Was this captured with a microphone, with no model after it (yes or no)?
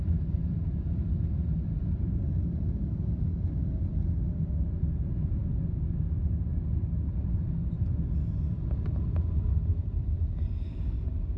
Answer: yes